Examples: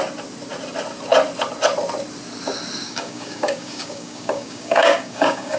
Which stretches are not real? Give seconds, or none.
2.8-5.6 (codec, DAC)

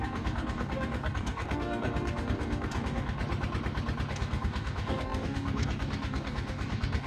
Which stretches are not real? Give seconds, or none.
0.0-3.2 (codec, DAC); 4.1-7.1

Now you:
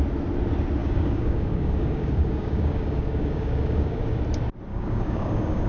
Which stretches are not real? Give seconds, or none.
0.8-4.2 (codec, DAC); 4.7-5.7